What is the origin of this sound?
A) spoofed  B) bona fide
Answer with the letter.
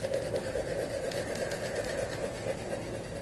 B